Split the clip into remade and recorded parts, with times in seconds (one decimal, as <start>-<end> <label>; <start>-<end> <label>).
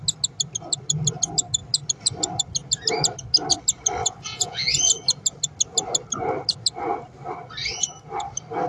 0.0-4.0 recorded; 4.0-4.7 remade; 4.7-8.7 recorded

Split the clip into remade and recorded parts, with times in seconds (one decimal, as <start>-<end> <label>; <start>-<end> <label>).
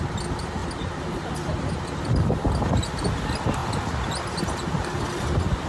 0.0-0.6 recorded; 0.6-1.7 remade; 1.7-5.7 recorded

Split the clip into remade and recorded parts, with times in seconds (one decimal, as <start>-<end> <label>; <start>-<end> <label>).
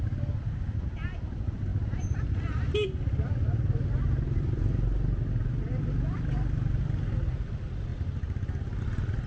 0.0-9.3 recorded